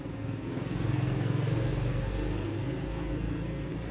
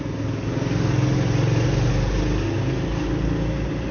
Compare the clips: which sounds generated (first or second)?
first